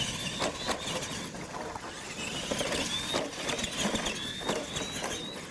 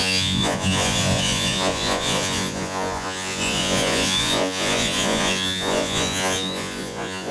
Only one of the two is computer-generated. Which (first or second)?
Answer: second